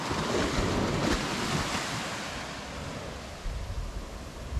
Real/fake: real